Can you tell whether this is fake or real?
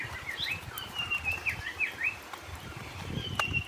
real